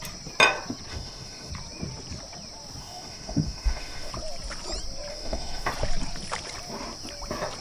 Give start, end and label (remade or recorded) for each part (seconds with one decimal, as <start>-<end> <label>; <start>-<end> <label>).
0.0-0.9 recorded; 0.9-1.5 remade; 1.5-2.8 recorded; 2.8-4.1 remade; 4.1-5.1 recorded; 5.1-5.7 remade; 5.7-7.6 recorded